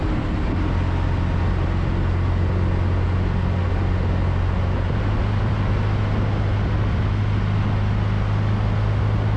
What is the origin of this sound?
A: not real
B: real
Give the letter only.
B